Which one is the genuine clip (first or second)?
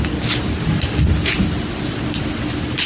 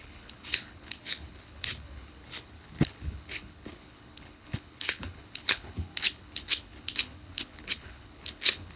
first